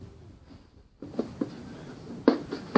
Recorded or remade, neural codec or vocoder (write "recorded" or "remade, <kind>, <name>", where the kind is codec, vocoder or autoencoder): recorded